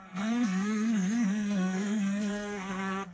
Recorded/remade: remade